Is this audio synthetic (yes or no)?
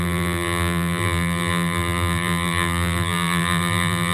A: yes